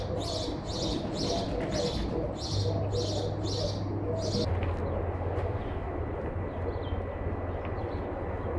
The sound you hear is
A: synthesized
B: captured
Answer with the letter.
B